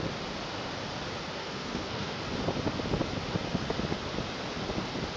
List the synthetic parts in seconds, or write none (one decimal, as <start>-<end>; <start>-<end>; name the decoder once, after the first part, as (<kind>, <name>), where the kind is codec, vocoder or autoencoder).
1.4-2.2 (codec, SNAC)